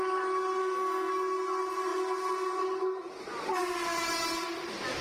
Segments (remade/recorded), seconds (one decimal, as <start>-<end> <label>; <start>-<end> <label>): 0.0-0.6 recorded; 0.6-1.1 remade; 1.1-5.0 recorded